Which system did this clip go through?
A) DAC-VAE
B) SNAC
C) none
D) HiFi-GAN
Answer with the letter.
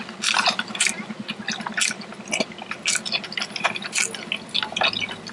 C